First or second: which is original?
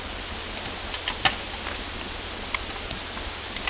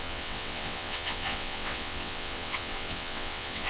first